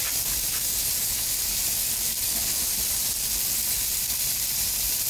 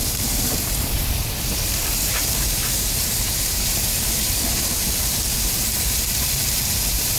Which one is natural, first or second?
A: first